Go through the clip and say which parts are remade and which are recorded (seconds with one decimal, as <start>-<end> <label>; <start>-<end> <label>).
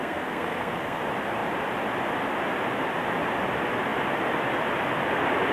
0.0-1.0 remade; 1.0-5.5 recorded